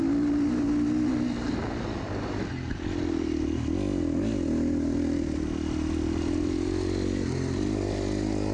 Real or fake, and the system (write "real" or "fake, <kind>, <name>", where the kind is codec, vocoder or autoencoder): real